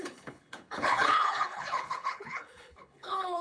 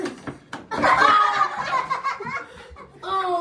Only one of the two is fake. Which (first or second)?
first